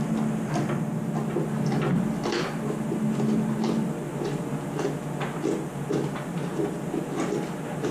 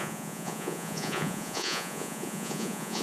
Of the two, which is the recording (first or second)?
first